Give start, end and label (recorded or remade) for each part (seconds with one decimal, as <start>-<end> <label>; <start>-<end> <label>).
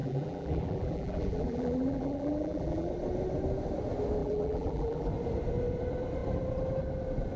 0.0-2.9 remade; 2.9-4.2 recorded; 4.2-5.1 remade; 5.1-7.4 recorded